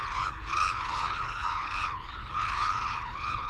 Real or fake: fake